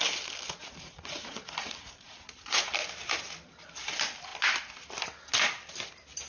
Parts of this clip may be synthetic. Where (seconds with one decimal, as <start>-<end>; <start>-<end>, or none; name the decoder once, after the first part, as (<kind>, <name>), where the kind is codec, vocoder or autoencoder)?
0.6-2.7 (vocoder, Vocos)